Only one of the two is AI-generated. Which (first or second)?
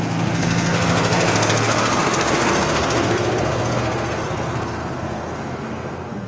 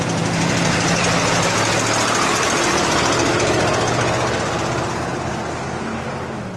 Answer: first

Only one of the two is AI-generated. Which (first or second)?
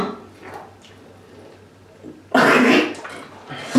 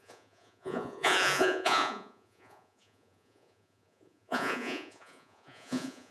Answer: second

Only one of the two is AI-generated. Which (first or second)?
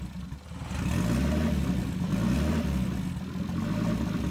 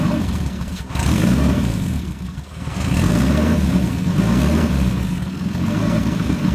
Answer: second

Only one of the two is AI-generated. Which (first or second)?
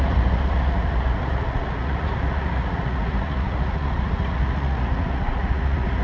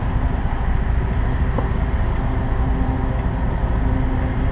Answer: first